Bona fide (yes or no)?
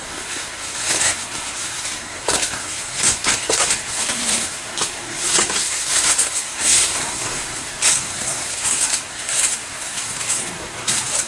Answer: no